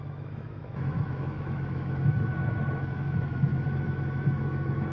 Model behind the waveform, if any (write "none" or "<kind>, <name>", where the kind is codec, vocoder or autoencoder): autoencoder, DAC-VAE